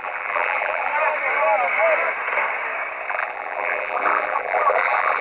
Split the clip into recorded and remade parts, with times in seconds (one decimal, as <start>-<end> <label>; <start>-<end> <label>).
0.0-0.9 remade; 0.9-3.1 recorded; 3.1-5.2 remade

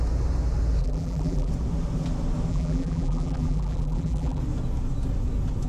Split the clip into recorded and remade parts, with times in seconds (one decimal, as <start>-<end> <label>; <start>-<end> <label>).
0.0-0.8 recorded; 0.8-1.5 remade; 1.5-2.5 recorded; 2.5-4.4 remade; 4.4-5.7 recorded

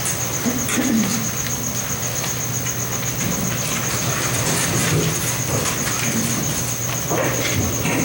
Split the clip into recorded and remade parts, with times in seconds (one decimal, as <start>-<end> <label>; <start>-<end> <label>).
0.0-8.0 recorded

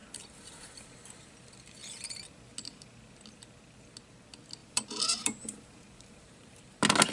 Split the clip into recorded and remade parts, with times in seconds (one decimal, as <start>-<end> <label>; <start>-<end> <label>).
0.0-0.8 remade; 0.8-4.6 recorded; 4.6-6.6 remade; 6.6-7.1 recorded

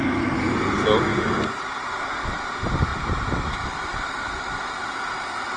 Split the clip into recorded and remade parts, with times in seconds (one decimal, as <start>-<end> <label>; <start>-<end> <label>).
0.0-1.1 recorded; 1.1-1.8 remade; 1.8-5.6 recorded

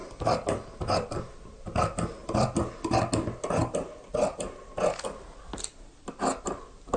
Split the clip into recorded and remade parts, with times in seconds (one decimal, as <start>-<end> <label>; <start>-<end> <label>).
0.0-2.2 recorded; 2.2-3.0 remade; 3.0-3.6 recorded; 3.6-4.8 remade; 4.8-7.0 recorded

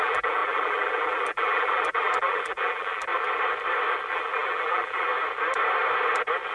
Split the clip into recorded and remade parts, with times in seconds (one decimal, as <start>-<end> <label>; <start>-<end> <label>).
0.0-3.1 remade; 3.1-4.1 recorded; 4.1-5.1 remade; 5.1-6.5 recorded

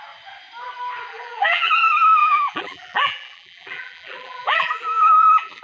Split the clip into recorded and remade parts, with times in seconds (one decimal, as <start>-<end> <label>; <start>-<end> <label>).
0.0-1.1 recorded; 1.1-1.7 remade; 1.7-2.2 recorded; 2.2-5.6 remade